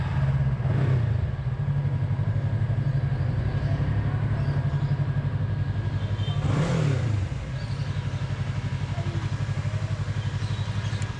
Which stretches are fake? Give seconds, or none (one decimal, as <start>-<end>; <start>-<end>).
none